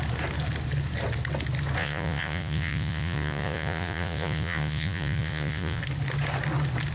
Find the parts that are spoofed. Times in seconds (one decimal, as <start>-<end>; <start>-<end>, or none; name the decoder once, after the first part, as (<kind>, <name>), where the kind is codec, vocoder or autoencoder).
1.8-5.8 (vocoder, Vocos)

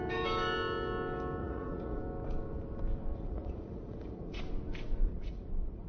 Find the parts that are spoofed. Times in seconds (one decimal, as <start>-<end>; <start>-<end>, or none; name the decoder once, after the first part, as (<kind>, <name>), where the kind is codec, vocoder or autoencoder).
1.4-2.0 (vocoder, Vocos); 3.1-4.4; 5.1-5.9

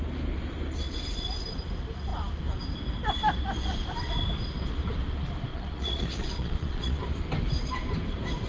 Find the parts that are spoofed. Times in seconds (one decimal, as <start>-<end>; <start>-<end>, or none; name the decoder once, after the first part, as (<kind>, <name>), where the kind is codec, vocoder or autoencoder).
5.5-7.0 (vocoder, Vocos)

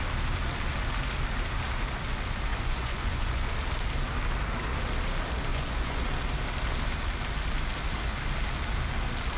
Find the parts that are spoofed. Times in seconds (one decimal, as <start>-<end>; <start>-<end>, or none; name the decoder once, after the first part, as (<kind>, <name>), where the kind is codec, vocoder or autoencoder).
2.5-3.5 (vocoder, Vocos); 5.5-6.0

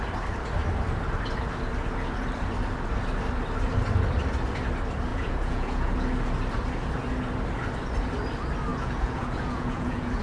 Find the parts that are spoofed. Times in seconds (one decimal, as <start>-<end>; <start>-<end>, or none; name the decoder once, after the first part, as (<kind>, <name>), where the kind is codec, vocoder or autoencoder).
5.1-5.9 (vocoder, Vocos); 8.7-10.2

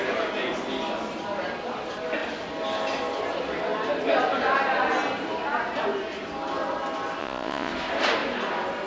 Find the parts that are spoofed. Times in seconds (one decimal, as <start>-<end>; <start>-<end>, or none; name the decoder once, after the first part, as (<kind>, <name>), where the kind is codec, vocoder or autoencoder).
7.2-7.7 (vocoder, Vocos)

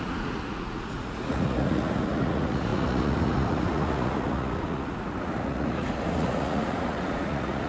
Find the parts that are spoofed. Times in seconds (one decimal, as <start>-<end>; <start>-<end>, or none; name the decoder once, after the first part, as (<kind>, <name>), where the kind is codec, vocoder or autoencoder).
0.0-7.7 (vocoder, Vocos)